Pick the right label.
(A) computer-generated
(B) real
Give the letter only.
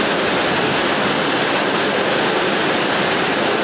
B